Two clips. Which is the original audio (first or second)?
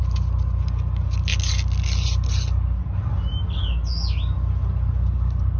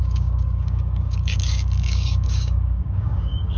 first